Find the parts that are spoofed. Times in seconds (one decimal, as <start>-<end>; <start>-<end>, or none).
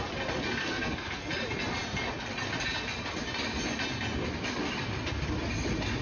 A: 0.6-1.3